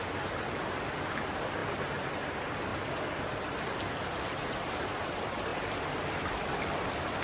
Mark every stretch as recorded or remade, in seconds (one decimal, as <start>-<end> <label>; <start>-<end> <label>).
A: 0.0-2.7 recorded; 2.7-4.1 remade; 4.1-7.2 recorded